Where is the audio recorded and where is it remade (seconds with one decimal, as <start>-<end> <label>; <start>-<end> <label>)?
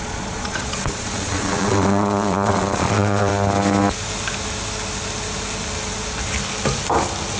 0.0-3.3 remade; 3.3-7.4 recorded